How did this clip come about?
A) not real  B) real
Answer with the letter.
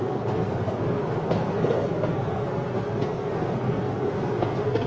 A